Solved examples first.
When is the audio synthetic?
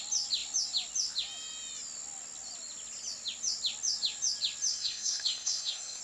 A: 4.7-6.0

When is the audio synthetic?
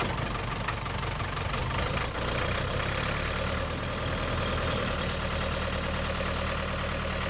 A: none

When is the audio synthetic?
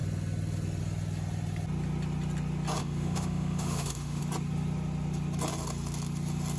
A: 2.8-4.2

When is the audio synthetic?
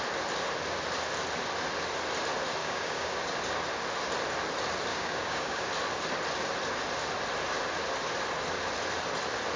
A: 2.6-3.2; 4.9-5.7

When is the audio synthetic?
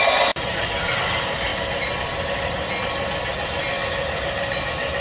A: 1.5-2.7